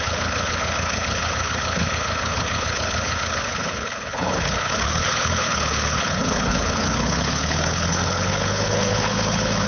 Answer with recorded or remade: remade